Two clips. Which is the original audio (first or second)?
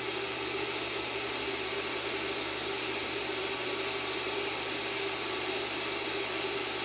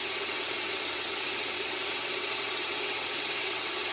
first